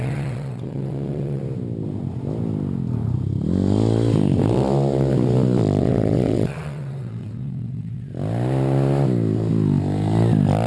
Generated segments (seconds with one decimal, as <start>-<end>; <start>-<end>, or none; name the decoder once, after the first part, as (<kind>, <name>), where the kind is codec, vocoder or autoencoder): 0.0-1.4 (vocoder, WaveNeXt); 5.8-8.1